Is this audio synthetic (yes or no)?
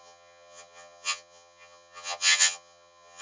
yes